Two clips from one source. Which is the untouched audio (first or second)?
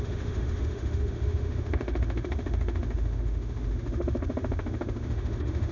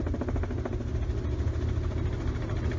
second